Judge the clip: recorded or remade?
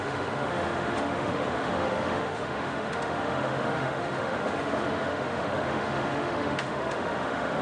remade